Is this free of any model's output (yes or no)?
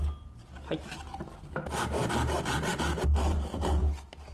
yes